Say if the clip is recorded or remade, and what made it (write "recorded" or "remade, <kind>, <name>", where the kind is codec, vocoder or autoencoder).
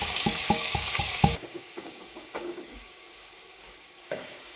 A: remade, codec, DAC